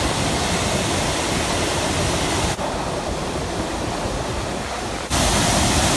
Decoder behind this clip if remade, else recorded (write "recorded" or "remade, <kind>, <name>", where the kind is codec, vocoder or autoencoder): recorded